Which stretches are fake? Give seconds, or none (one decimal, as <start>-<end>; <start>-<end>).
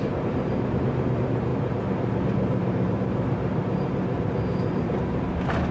0.0-5.7